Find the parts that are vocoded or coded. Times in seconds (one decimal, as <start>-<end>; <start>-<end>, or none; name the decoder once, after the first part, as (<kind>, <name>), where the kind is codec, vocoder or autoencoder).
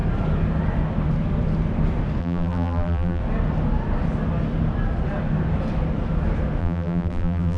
2.2-3.2 (vocoder, BigVGAN v2); 6.6-7.6